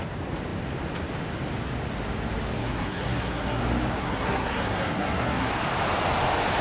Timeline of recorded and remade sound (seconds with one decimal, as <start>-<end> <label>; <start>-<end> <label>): 0.0-2.6 recorded; 2.6-3.6 remade; 3.6-4.0 recorded; 4.0-5.5 remade; 5.5-6.6 recorded